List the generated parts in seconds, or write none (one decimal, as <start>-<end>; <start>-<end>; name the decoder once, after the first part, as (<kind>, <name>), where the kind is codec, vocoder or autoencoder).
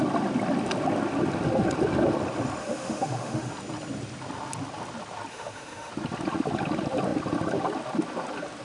2.6-3.5 (autoencoder, DAC-VAE); 5.3-5.9